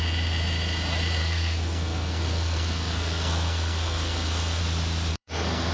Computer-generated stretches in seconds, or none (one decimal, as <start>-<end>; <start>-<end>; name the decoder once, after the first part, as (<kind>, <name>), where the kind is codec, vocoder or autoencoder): 1.2-4.6 (codec, SNAC); 5.1-5.7